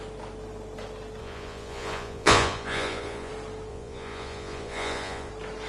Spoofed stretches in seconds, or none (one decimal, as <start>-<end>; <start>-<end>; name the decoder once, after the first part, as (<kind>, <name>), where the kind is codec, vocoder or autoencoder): 1.2-3.3 (vocoder, Vocos); 3.7-5.3